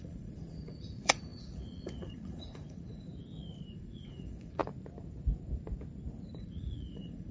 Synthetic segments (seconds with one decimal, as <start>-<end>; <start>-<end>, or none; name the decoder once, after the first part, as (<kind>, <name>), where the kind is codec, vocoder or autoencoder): 0.0-3.1 (vocoder, Vocos); 3.7-4.6; 6.4-7.3